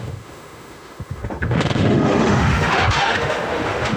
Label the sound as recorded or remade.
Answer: remade